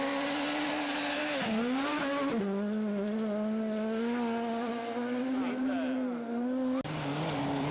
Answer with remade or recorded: recorded